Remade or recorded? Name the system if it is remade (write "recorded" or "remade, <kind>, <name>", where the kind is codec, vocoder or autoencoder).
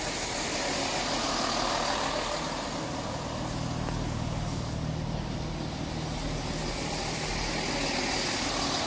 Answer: recorded